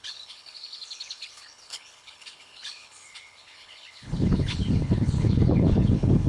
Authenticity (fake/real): fake